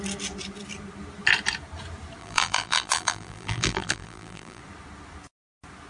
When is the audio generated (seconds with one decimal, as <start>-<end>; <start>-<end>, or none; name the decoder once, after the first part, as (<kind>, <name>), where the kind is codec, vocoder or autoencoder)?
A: 2.2-4.6 (vocoder, BigVGAN v2)